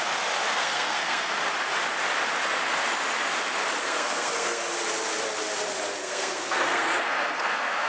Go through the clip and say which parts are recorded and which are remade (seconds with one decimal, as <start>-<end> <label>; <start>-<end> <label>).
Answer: 0.0-0.5 recorded; 0.5-1.3 remade; 1.3-3.8 recorded; 3.8-4.8 remade; 4.8-6.0 recorded; 6.0-7.9 remade